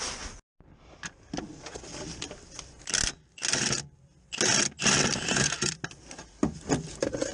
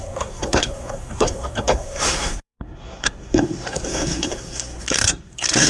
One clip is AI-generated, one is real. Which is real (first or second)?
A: first